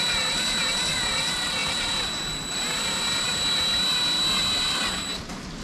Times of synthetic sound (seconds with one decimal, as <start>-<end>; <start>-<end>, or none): none